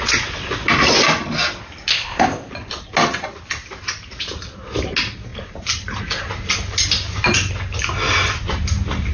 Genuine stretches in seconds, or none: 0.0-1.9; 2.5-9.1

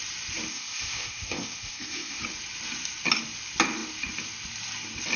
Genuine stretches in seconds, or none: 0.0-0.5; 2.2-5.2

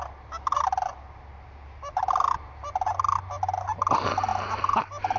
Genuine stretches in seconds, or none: 0.0-5.2

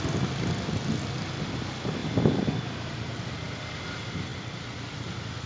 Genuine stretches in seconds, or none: 0.0-5.5

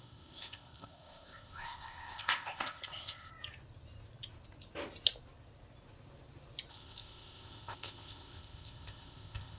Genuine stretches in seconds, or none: 3.3-6.7